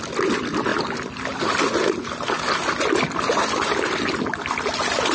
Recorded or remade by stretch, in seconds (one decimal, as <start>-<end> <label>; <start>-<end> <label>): 0.0-5.1 recorded